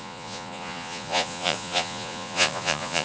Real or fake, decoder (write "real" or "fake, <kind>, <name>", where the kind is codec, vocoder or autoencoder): fake, vocoder, Vocos